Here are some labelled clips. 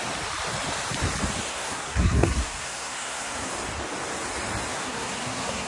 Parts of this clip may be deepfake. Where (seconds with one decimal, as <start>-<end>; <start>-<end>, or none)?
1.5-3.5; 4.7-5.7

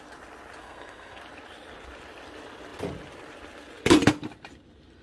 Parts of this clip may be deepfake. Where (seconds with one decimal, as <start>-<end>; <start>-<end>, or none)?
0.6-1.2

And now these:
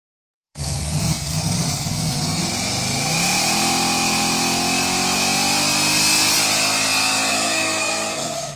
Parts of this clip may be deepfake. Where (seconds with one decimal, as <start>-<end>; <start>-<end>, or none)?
0.0-2.4; 7.3-8.6